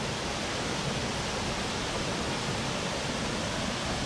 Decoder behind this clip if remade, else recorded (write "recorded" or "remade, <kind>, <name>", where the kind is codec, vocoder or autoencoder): recorded